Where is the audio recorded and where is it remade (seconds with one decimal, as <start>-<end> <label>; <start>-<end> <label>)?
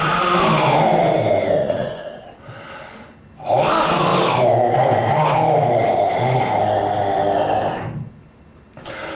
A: 0.0-1.6 recorded; 1.6-2.2 remade; 2.2-9.1 recorded